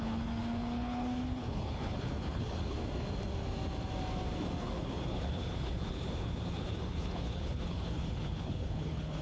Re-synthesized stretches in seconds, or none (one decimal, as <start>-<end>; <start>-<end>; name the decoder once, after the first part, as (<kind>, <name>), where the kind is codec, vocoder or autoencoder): 0.0-2.8 (codec, HILCodec); 4.6-9.2